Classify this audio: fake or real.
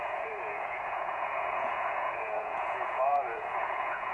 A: fake